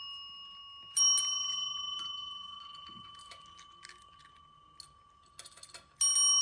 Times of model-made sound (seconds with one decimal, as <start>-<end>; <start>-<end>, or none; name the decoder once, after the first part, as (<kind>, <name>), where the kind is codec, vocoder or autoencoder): none